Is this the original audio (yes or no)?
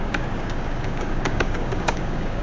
no